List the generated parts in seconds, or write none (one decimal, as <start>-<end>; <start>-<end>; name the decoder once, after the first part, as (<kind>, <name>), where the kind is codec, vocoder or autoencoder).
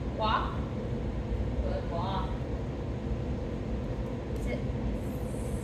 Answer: 0.0-2.0 (vocoder, BigVGAN v2)